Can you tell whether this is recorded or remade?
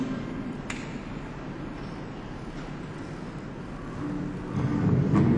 recorded